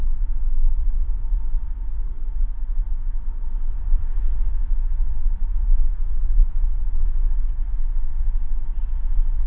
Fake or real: fake